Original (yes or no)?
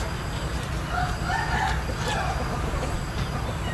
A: yes